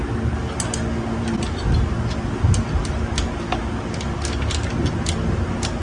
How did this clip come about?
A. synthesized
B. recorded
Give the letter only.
B